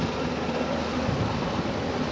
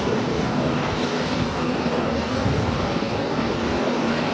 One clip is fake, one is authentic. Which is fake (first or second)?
second